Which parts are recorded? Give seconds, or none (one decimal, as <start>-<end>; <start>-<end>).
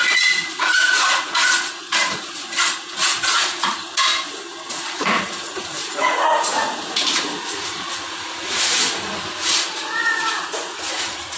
4.1-4.7